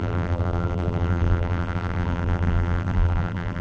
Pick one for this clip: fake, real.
fake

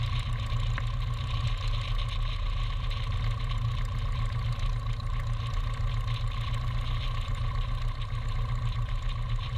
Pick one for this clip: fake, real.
real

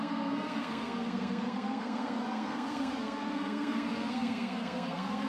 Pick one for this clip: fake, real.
fake